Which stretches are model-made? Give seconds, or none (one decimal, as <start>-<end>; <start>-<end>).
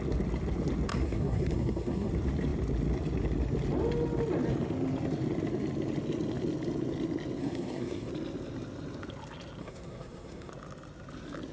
0.9-2.1; 7.4-8.1; 9.6-10.5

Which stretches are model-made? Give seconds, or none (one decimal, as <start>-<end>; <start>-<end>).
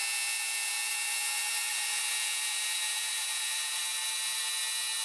0.0-0.9; 1.7-3.8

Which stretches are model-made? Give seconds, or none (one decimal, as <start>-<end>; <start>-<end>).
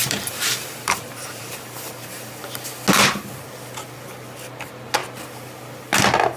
0.0-2.4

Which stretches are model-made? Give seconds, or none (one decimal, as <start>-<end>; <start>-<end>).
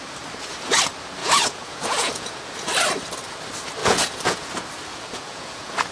1.2-2.4; 3.8-4.5; 4.9-5.9